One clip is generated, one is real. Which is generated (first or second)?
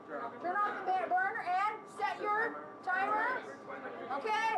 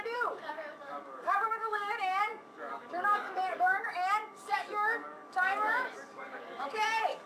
second